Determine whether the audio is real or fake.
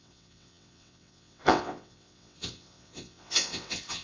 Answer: fake